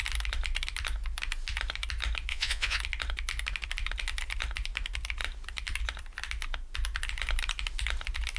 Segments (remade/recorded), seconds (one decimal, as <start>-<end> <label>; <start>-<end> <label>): 0.0-2.3 recorded; 2.3-2.8 remade; 2.8-8.4 recorded